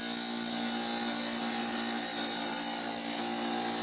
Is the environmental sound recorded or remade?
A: recorded